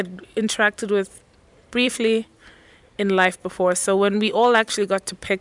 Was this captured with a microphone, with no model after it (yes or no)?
no